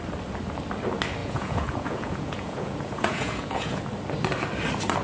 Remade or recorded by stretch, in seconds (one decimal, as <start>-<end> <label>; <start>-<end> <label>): 0.0-1.2 recorded; 1.2-3.8 remade; 3.8-5.0 recorded